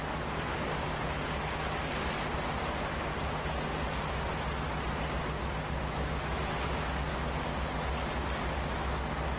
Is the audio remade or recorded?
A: recorded